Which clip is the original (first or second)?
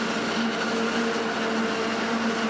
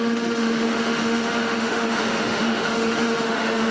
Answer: first